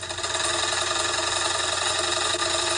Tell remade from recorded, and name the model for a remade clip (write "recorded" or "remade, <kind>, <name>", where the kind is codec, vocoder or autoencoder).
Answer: recorded